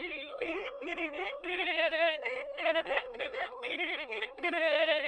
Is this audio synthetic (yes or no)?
yes